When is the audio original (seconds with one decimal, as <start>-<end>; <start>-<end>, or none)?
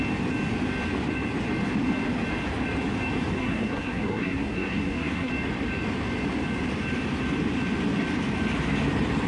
0.0-3.4; 5.3-9.3